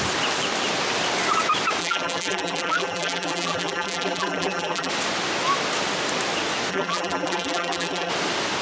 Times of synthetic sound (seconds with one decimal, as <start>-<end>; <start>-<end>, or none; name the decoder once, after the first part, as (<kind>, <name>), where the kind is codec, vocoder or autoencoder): 1.8-4.9 (vocoder, BigVGAN v2); 6.7-8.1